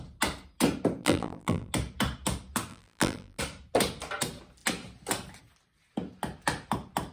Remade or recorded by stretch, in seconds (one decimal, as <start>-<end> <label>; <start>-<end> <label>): 0.0-1.0 recorded; 1.0-1.7 remade; 1.7-2.7 recorded; 2.7-3.4 remade; 3.4-7.1 recorded